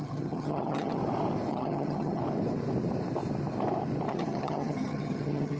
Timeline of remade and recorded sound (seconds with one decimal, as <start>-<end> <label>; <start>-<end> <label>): 0.0-1.0 remade; 1.0-1.5 recorded; 1.5-2.2 remade; 2.2-4.1 recorded; 4.1-5.6 remade